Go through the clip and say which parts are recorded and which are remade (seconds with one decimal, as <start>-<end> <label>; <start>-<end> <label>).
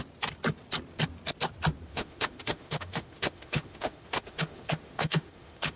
0.0-1.9 recorded; 1.9-5.8 remade